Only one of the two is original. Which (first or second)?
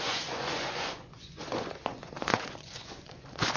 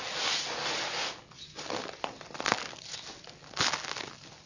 second